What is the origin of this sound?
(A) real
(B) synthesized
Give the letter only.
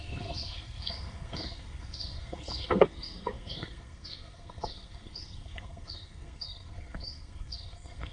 B